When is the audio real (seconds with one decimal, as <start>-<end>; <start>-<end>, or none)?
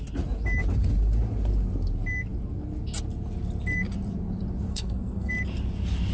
0.0-4.7; 5.3-6.1